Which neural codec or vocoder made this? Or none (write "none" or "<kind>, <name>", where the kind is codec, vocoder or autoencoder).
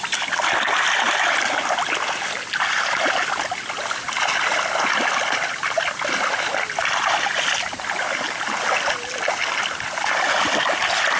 none